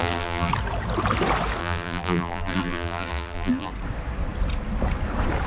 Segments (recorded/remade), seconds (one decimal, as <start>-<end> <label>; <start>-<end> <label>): 0.0-0.5 remade; 0.5-1.6 recorded; 1.6-3.7 remade; 3.7-5.5 recorded